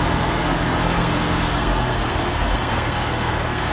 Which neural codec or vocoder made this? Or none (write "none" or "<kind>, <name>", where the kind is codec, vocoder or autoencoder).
codec, SNAC